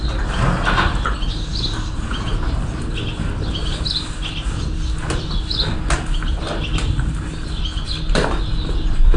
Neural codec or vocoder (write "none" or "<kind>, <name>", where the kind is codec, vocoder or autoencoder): none